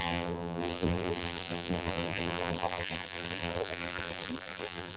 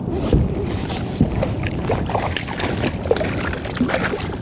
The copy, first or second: first